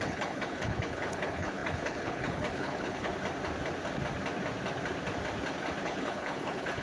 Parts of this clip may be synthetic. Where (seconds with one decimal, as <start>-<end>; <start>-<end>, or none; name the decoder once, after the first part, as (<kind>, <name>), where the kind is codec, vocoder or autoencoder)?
0.0-3.1 (codec, HILCodec); 5.8-6.8